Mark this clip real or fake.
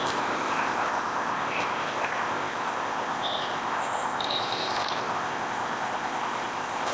fake